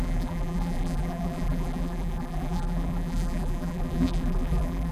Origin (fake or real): fake